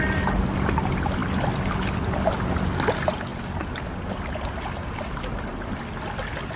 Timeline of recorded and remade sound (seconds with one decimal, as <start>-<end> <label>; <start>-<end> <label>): 0.0-6.6 recorded